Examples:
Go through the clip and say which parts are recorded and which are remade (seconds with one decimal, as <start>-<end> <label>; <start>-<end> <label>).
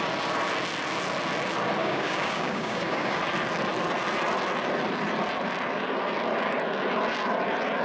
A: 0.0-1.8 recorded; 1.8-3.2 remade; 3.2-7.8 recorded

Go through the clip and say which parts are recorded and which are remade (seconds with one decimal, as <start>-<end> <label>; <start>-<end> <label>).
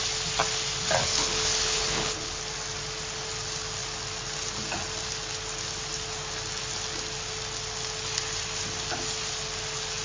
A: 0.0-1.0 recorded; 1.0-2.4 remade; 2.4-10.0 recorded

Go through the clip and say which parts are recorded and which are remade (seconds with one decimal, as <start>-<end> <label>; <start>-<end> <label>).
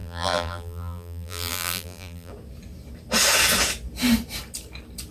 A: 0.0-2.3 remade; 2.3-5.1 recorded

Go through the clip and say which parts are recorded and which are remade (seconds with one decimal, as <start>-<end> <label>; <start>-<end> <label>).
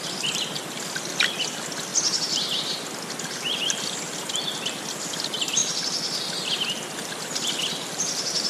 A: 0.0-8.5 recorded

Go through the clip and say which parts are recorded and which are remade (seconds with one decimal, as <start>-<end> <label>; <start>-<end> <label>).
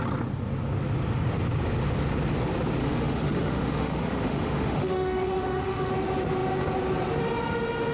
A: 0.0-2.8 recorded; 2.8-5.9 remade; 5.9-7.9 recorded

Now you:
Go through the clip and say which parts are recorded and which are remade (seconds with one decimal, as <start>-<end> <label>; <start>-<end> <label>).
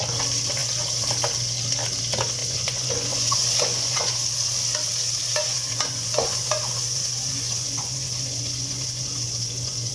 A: 0.0-2.4 recorded; 2.4-4.1 remade; 4.1-5.2 recorded; 5.2-9.9 remade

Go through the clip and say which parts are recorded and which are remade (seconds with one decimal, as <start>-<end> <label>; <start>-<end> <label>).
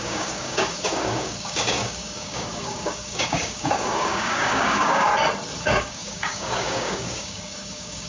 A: 0.0-5.1 remade; 5.1-5.6 recorded; 5.6-8.1 remade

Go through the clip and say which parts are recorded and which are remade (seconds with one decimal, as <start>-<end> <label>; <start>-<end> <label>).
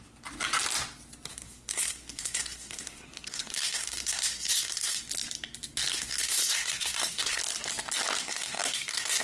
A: 0.0-1.3 recorded; 1.3-5.0 remade; 5.0-5.9 recorded; 5.9-7.4 remade; 7.4-8.2 recorded; 8.2-9.2 remade